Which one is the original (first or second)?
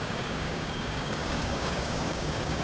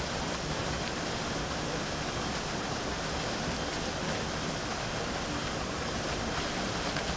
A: second